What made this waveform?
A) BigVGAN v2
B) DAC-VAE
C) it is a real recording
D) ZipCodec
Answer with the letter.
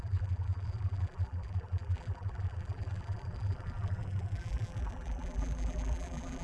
A